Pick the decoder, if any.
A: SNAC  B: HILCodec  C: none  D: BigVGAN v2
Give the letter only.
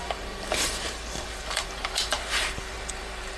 D